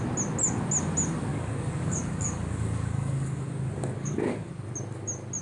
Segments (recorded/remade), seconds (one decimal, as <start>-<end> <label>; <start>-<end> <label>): 0.0-1.3 recorded; 1.3-4.5 remade; 4.5-5.4 recorded

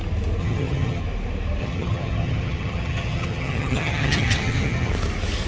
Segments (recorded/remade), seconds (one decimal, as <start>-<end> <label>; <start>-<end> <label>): 0.0-0.4 recorded; 0.4-1.0 remade; 1.0-1.6 recorded; 1.6-4.9 remade; 4.9-5.5 recorded

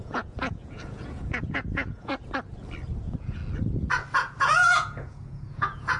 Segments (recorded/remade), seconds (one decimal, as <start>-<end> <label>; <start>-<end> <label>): 0.0-2.1 remade; 2.1-2.9 recorded; 2.9-3.4 remade; 3.4-4.4 recorded; 4.4-6.0 remade